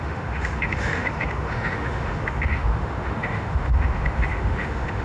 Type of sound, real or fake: fake